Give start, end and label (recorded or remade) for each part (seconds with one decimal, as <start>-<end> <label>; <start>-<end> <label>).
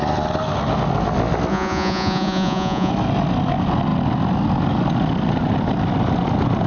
0.0-1.5 recorded; 1.5-2.9 remade; 2.9-6.7 recorded